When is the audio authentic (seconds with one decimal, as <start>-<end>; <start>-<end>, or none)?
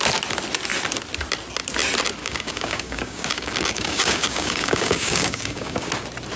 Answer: 0.0-2.2; 5.9-6.4